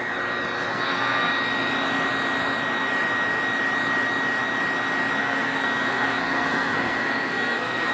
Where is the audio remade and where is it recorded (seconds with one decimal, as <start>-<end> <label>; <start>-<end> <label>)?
0.0-0.7 recorded; 0.7-1.3 remade; 1.3-5.2 recorded; 5.2-7.9 remade